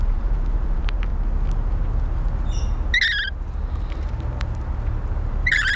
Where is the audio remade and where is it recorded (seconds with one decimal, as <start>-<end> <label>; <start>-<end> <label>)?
0.0-1.1 remade; 1.1-3.7 recorded; 3.7-5.8 remade